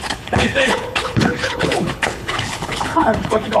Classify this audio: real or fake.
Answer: fake